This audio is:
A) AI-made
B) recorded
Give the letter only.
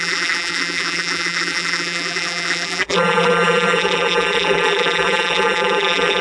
A